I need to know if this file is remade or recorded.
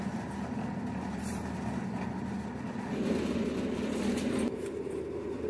remade